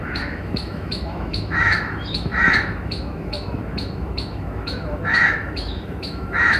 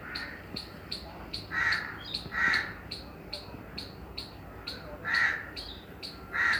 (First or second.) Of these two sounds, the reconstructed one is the first